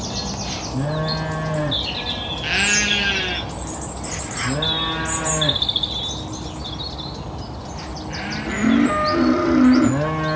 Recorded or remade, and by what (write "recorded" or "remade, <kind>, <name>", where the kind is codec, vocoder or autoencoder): recorded